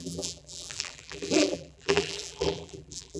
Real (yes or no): no